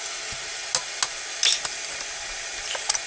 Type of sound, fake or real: real